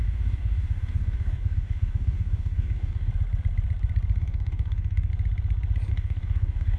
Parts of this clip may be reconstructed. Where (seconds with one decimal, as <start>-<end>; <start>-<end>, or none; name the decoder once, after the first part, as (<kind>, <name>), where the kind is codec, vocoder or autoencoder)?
0.0-3.1 (codec, DAC); 4.2-5.1; 5.9-6.8